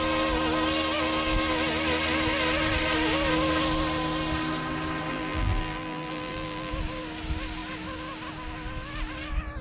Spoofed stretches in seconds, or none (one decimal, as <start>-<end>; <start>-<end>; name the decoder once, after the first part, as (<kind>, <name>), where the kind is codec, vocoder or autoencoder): 5.1-6.7 (vocoder, BigVGAN v2)